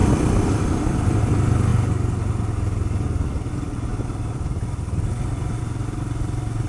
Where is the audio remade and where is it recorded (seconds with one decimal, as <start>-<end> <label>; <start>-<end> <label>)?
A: 0.0-1.2 remade; 1.2-3.9 recorded; 3.9-5.6 remade; 5.6-6.7 recorded